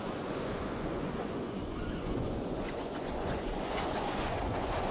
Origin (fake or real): fake